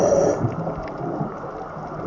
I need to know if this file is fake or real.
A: real